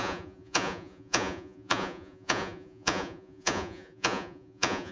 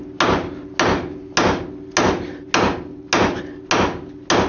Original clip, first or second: second